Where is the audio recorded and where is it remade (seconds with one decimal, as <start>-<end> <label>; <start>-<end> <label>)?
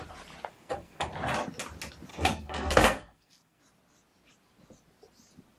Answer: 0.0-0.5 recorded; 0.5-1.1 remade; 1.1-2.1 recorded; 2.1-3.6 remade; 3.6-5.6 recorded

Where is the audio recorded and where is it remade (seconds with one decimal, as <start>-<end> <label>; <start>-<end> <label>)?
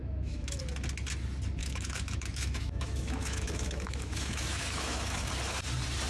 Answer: 0.0-0.6 remade; 0.6-1.6 recorded; 1.6-5.3 remade; 5.3-6.1 recorded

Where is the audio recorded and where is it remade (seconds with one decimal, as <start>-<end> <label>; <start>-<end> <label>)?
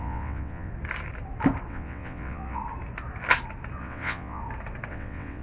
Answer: 0.0-0.7 remade; 0.7-1.7 recorded; 1.7-2.6 remade; 2.6-3.8 recorded; 3.8-4.4 remade; 4.4-4.9 recorded; 4.9-5.4 remade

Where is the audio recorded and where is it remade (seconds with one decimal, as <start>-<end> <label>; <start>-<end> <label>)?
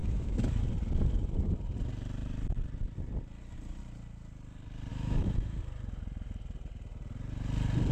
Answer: 0.0-0.6 remade; 0.6-4.9 recorded; 4.9-5.6 remade; 5.6-7.9 recorded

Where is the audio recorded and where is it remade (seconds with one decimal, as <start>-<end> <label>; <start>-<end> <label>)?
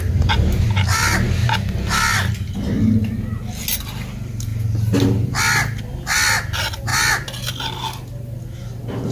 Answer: 0.0-9.1 recorded